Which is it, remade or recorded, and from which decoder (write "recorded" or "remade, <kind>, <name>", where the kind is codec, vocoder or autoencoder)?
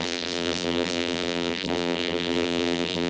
remade, vocoder, BigVGAN v2